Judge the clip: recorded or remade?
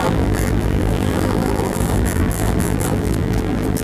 remade